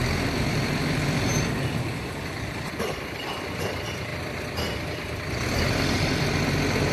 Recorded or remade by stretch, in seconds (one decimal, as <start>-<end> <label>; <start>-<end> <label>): 0.0-1.3 remade; 1.3-2.9 recorded; 2.9-6.9 remade